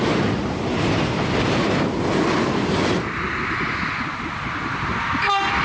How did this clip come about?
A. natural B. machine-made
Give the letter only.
A